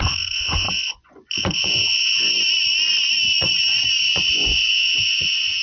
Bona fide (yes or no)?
no